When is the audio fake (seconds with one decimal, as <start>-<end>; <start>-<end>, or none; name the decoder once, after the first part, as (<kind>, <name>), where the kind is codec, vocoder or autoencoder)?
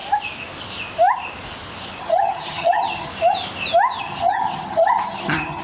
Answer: 2.0-3.1 (vocoder, HiFi-GAN); 4.0-5.6